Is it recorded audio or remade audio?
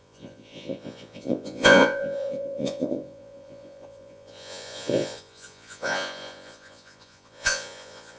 remade